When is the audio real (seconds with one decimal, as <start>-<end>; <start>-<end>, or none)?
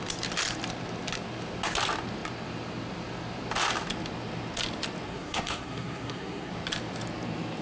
0.0-5.1; 6.5-7.6